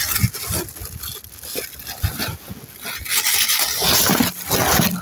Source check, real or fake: real